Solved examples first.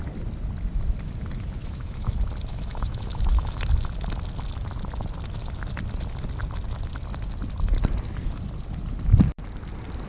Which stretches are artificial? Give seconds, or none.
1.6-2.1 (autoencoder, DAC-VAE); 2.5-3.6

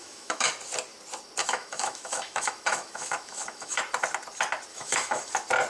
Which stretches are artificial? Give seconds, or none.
0.0-0.5 (autoencoder, DAC-VAE); 1.4-3.8; 4.7-5.3

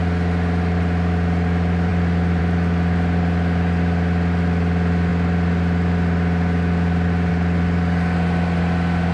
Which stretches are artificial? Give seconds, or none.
none

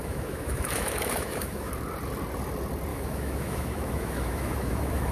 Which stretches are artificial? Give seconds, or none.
0.0-1.7 (autoencoder, DAC-VAE); 2.9-5.1

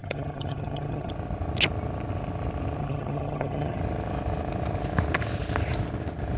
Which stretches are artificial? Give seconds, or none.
0.0-1.1 (vocoder, HiFi-GAN); 2.8-3.8

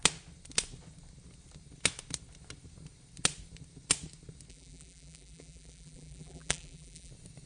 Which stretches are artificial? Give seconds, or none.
4.5-7.1 (vocoder, BigVGAN v2)

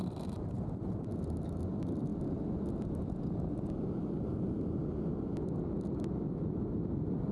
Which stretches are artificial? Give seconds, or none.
none